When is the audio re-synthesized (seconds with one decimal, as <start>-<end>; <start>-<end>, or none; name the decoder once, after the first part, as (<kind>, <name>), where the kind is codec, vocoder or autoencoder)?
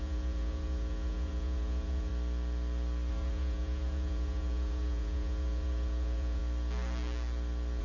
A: 0.0-2.1 (vocoder, Vocos); 3.1-6.4